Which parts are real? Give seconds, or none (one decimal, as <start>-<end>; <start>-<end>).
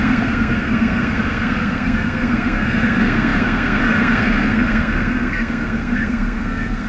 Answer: none